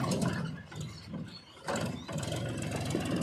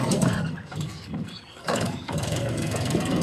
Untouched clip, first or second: first